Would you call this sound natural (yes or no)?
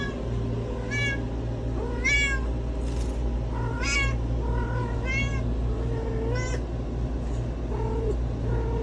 yes